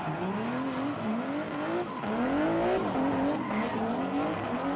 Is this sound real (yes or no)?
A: yes